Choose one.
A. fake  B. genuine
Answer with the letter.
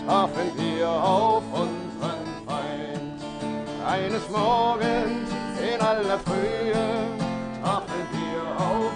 B